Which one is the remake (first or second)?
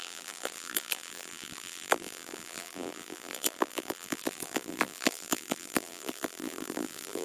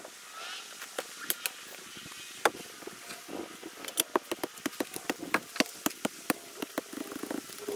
first